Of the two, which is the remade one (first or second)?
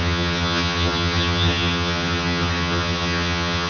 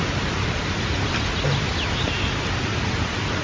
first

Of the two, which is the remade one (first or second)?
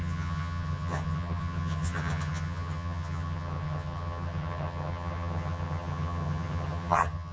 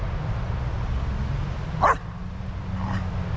first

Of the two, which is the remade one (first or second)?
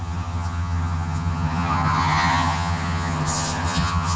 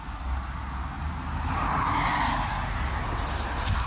first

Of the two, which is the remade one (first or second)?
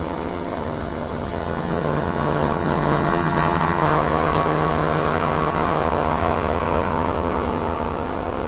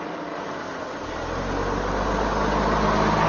first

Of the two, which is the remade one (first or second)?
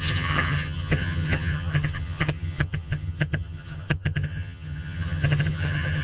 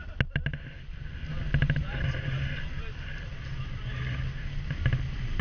first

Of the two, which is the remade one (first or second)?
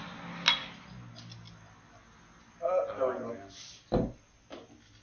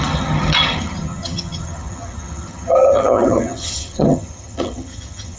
second